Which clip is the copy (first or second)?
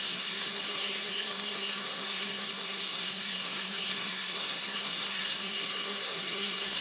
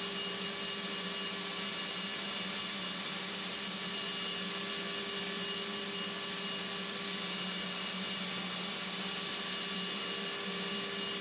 first